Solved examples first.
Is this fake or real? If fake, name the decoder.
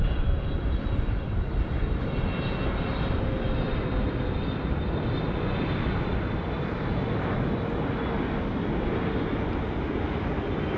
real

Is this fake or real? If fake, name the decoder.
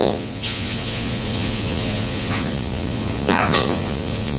fake, vocoder, Vocos